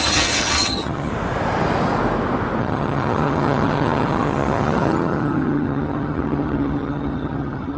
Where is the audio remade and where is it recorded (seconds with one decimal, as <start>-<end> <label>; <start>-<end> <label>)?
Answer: 0.0-1.1 remade; 1.1-2.6 recorded; 2.6-7.8 remade